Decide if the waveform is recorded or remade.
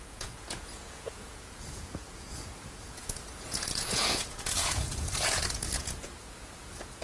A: remade